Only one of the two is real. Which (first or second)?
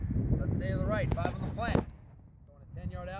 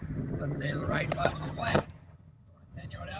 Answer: first